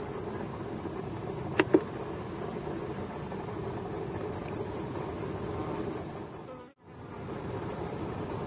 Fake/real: real